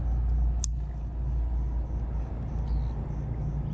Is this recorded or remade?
recorded